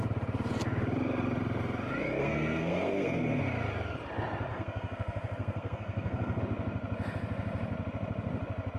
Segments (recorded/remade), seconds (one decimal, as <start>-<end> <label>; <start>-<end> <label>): 0.0-2.2 recorded; 2.2-3.4 remade; 3.4-4.5 recorded; 4.5-6.4 remade; 6.4-8.8 recorded

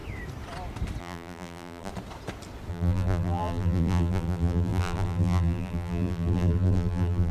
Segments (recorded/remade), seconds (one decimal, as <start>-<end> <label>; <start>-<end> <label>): 0.0-1.0 recorded; 1.0-1.9 remade; 1.9-2.7 recorded; 2.7-7.3 remade

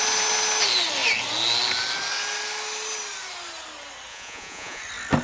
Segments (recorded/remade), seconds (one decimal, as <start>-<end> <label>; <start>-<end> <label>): 0.0-4.1 recorded; 4.1-4.8 remade; 4.8-5.2 recorded

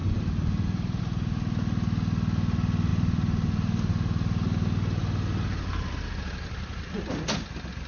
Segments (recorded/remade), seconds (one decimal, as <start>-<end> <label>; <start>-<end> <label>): 0.0-1.0 remade; 1.0-2.9 recorded; 2.9-3.9 remade; 3.9-7.9 recorded

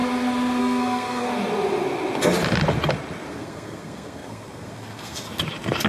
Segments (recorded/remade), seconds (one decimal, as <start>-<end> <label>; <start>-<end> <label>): 0.0-0.6 recorded; 0.6-1.3 remade; 1.3-3.3 recorded; 3.3-5.3 remade; 5.3-5.9 recorded

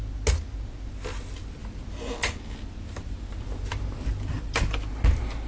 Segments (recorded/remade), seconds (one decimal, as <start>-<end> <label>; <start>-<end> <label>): 0.0-1.6 recorded; 1.6-4.9 remade; 4.9-5.5 recorded

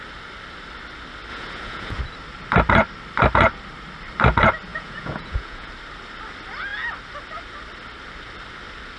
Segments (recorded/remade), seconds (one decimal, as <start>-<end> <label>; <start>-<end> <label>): 0.0-1.3 recorded; 1.3-2.0 remade; 2.0-4.7 recorded; 4.7-5.7 remade; 5.7-9.0 recorded

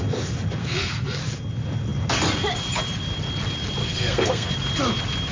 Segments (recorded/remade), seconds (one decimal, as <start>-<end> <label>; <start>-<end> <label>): 0.0-0.6 recorded; 0.6-1.2 remade; 1.2-3.8 recorded; 3.8-4.5 remade; 4.5-5.3 recorded